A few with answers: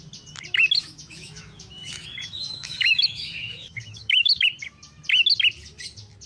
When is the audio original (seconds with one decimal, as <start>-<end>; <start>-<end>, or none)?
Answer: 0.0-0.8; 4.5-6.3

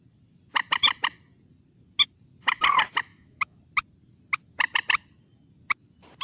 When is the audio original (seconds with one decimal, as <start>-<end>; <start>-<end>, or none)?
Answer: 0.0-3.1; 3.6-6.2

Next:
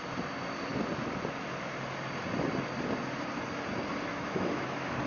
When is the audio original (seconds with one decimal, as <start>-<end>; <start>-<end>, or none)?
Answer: 0.0-4.1

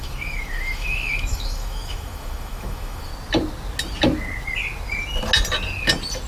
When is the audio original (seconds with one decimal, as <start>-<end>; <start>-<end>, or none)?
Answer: 3.1-6.3

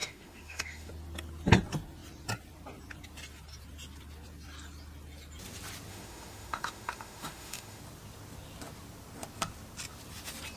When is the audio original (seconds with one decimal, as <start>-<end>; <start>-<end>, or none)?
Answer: 0.9-5.9; 7.8-10.6

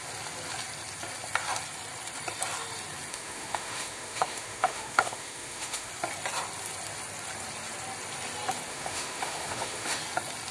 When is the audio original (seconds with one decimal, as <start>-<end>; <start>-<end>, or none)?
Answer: 0.0-3.1; 5.9-8.7; 10.0-10.5

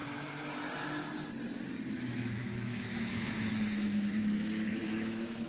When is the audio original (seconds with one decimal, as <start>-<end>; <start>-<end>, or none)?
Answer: 0.0-1.9

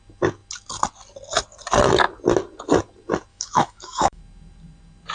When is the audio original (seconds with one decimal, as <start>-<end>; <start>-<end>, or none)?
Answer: 0.0-3.3; 4.2-5.1